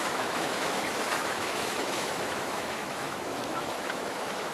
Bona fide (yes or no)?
no